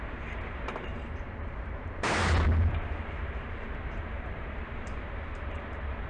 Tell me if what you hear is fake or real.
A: fake